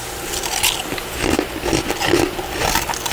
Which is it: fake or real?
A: real